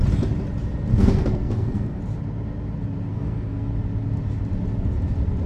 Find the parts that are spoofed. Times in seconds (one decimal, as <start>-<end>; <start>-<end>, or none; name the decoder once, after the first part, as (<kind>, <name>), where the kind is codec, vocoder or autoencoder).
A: 0.9-2.0 (codec, SNAC); 3.1-3.7